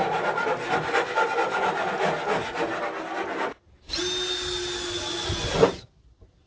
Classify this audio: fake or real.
real